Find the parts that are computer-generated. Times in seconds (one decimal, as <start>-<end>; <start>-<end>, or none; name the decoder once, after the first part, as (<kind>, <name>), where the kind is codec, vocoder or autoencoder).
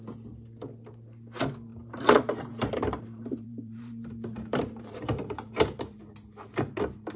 1.7-6.0 (vocoder, BigVGAN v2)